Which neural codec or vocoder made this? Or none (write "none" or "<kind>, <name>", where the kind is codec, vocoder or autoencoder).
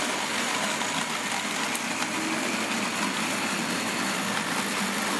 none